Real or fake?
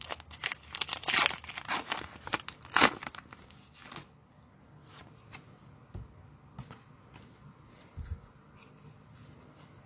real